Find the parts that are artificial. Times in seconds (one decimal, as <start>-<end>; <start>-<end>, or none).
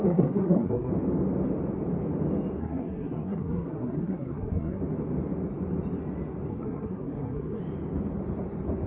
0.0-0.9; 2.6-4.8; 6.5-7.6